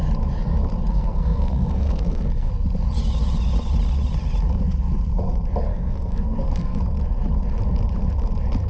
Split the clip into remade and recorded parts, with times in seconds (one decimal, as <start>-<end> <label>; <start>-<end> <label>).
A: 0.0-0.9 recorded; 0.9-2.5 remade; 2.5-5.7 recorded; 5.7-6.8 remade; 6.8-8.7 recorded